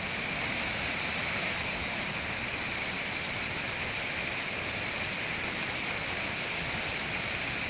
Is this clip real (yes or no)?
no